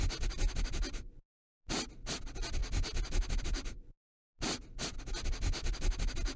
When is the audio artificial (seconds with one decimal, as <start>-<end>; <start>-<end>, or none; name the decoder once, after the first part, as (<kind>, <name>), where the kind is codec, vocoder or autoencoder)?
none

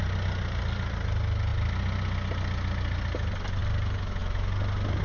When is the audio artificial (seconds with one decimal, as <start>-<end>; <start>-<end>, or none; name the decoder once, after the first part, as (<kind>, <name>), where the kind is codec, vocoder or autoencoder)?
none

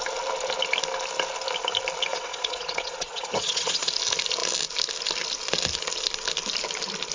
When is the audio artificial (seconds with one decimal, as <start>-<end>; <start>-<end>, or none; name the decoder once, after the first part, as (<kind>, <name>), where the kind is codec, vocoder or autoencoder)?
2.1-3.9 (vocoder, Vocos)

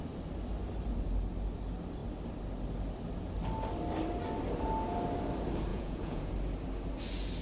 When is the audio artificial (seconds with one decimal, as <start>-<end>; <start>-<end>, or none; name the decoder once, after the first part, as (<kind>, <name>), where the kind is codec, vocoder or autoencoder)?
5.7-6.3 (vocoder, Vocos)

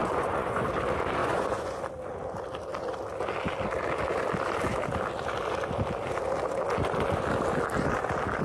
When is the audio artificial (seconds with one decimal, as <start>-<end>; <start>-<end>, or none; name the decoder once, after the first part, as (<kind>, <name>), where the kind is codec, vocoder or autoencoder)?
0.0-0.7 (vocoder, Vocos); 1.2-1.8

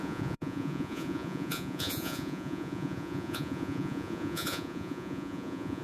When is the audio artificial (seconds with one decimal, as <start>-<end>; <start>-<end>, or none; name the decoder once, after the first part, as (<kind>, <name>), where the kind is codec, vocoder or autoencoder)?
0.0-5.8 (vocoder, Vocos)

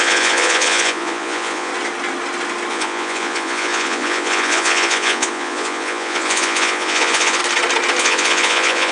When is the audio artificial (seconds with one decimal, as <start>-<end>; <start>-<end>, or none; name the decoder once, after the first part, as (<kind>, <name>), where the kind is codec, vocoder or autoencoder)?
0.0-1.7 (vocoder, Vocos); 2.7-7.4; 8.0-8.9

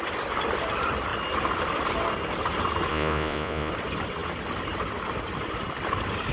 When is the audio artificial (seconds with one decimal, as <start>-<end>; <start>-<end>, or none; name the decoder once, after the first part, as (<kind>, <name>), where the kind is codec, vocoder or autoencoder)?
2.9-3.7 (vocoder, Vocos)